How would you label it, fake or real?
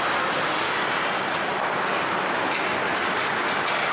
real